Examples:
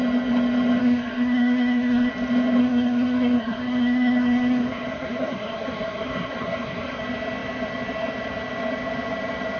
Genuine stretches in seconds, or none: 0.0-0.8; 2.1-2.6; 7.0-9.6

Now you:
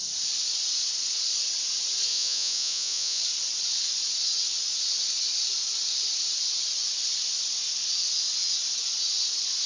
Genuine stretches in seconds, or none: 0.0-2.1; 3.2-9.7

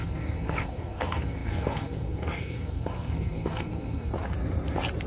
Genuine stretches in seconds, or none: 4.1-5.1

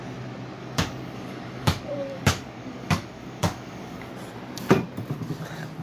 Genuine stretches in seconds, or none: 0.0-0.6; 4.1-5.8